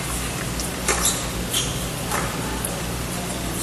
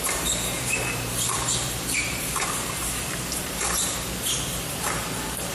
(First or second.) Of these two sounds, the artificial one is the second